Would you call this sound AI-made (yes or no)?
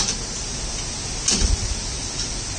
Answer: no